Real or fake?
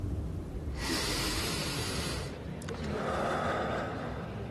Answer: fake